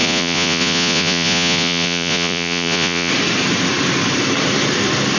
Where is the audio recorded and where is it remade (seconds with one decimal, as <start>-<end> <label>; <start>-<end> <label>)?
0.0-3.1 remade; 3.1-5.2 recorded